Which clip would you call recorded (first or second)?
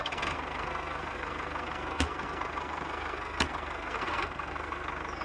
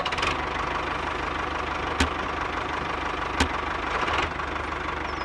second